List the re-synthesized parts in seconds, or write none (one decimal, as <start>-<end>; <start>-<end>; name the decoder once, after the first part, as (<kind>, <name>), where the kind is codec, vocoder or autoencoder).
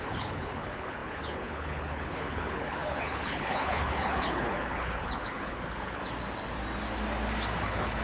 0.0-6.0 (codec, HILCodec); 7.6-8.0